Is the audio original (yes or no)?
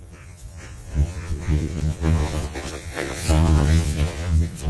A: no